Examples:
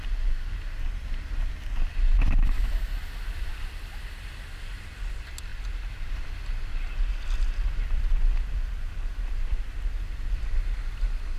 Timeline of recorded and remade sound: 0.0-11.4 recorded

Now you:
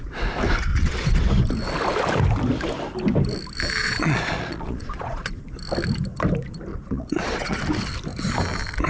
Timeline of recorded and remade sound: 0.0-0.7 recorded; 0.7-1.3 remade; 1.3-3.8 recorded; 3.8-5.3 remade; 5.3-6.7 recorded; 6.7-7.6 remade; 7.6-8.9 recorded